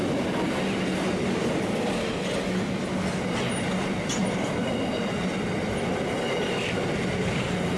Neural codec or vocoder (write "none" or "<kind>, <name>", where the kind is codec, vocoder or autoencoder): none